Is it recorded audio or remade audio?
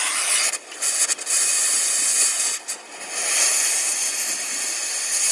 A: recorded